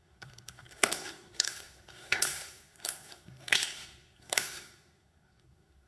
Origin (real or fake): fake